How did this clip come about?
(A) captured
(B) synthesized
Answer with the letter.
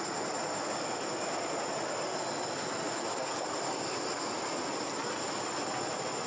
A